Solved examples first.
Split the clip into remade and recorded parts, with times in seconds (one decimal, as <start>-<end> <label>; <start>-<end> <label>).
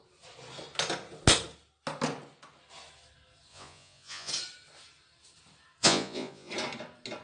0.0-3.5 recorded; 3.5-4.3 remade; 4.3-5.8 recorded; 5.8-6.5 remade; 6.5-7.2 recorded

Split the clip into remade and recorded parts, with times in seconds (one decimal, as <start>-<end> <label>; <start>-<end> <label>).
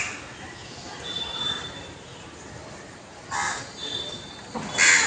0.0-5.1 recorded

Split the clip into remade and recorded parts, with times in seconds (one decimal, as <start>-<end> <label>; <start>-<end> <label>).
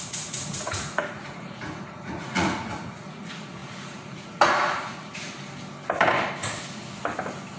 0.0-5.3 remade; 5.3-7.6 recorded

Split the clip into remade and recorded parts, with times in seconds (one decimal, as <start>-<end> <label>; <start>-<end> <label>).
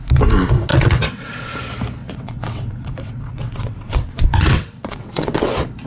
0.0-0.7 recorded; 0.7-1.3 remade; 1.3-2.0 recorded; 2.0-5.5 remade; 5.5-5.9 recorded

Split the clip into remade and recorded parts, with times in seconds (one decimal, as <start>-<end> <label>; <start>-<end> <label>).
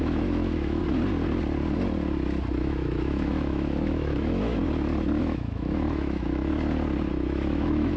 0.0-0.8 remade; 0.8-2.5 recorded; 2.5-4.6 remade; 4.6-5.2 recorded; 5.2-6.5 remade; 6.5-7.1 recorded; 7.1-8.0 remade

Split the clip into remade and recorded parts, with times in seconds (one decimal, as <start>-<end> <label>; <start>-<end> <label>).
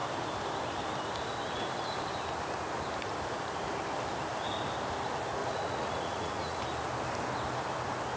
0.0-5.4 recorded; 5.4-6.6 remade; 6.6-8.2 recorded